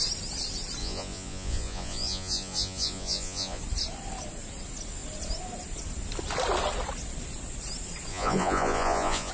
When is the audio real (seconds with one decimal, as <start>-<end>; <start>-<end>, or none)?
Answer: 0.0-0.8; 3.6-8.1